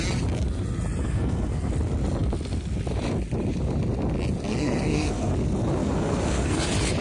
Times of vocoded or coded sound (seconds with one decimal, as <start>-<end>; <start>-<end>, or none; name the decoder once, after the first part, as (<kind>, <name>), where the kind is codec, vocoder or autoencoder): 1.0-1.7 (codec, SNAC); 4.5-5.3; 5.8-6.6

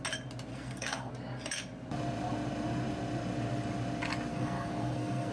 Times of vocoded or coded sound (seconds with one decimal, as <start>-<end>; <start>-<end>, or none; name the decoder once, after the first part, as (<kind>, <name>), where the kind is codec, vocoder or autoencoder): 0.5-1.1 (codec, SNAC); 4.3-5.3

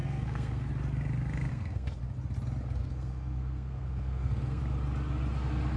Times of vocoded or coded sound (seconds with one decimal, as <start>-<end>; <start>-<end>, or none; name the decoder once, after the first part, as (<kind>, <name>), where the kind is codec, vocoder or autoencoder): 0.0-0.7 (codec, SNAC); 1.5-2.0; 2.8-4.6

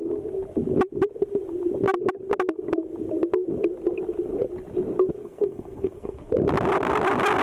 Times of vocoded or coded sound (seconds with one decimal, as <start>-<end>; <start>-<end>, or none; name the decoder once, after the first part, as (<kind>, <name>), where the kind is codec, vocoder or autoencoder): 5.2-6.3 (codec, SNAC)

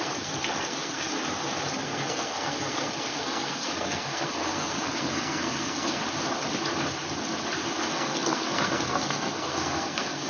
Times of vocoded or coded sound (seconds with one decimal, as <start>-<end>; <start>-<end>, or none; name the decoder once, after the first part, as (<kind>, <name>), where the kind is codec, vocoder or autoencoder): 0.0-1.1 (codec, SNAC); 1.8-6.0; 7.9-10.3